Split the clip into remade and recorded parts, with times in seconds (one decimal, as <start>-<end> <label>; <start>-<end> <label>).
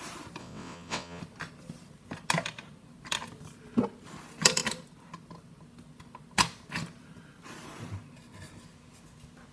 0.0-0.4 recorded; 0.4-1.2 remade; 1.2-9.5 recorded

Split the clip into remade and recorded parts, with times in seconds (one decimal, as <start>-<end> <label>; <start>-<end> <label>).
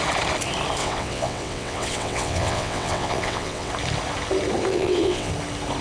0.0-0.8 recorded; 0.8-3.7 remade; 3.7-4.7 recorded; 4.7-5.3 remade; 5.3-5.8 recorded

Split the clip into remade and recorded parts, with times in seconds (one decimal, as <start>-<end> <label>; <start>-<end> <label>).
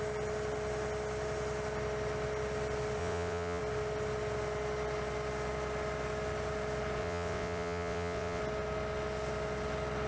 0.0-3.0 recorded; 3.0-3.6 remade; 3.6-7.0 recorded; 7.0-8.4 remade; 8.4-10.1 recorded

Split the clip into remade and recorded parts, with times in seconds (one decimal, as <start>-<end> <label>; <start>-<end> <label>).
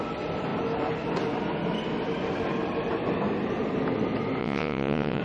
0.0-4.4 recorded; 4.4-5.2 remade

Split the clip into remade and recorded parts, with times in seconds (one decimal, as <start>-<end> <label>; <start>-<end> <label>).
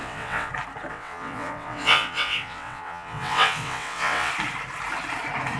0.0-0.5 remade; 0.5-0.9 recorded; 0.9-4.3 remade; 4.3-5.6 recorded